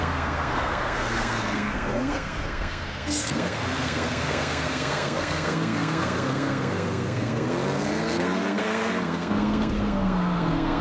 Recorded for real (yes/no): no